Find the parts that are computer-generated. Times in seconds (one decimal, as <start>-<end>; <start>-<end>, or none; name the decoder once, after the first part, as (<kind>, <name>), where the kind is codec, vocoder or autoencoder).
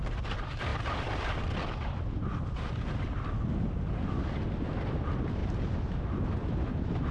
none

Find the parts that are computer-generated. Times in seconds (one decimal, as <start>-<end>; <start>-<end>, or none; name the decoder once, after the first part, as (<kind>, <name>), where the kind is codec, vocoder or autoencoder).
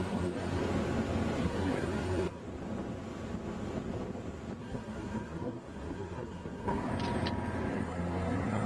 0.0-0.6 (codec, SNAC); 1.4-2.4; 4.6-6.9; 7.7-8.7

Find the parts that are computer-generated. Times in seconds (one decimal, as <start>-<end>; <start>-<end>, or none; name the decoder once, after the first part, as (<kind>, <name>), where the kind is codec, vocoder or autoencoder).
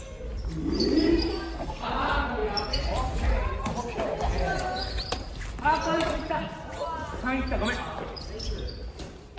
1.3-1.9 (codec, SNAC)